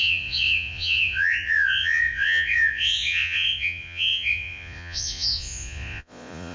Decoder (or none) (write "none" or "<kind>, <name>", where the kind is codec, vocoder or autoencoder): vocoder, Vocos